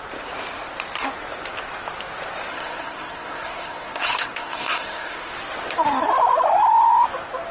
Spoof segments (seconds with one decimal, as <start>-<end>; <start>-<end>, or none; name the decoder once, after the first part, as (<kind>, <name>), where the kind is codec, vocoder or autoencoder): 2.5-5.3 (codec, SNAC)